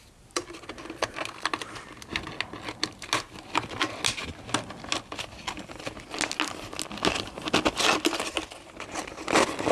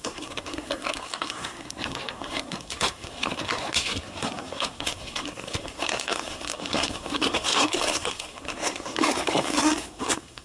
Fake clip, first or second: second